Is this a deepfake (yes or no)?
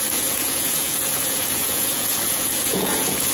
yes